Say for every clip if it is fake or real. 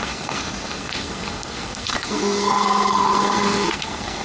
fake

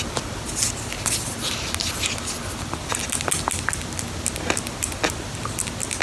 real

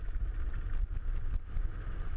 real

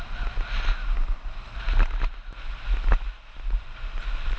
real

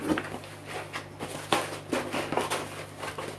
real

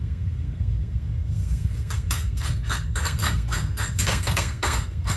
fake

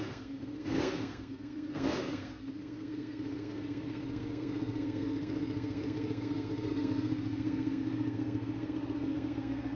fake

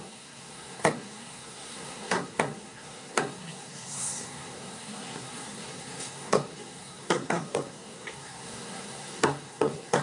fake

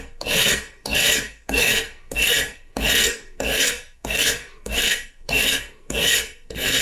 fake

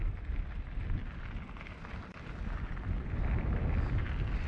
real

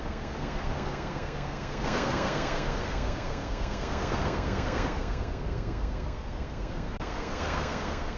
fake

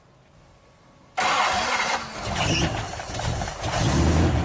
real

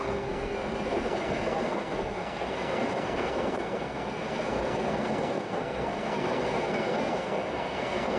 fake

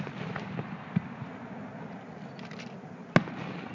real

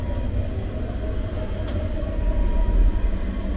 real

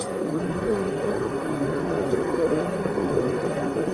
fake